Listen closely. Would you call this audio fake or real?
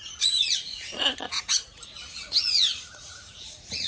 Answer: fake